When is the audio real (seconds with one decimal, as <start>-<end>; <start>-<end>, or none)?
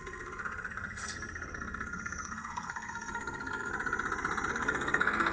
3.7-4.5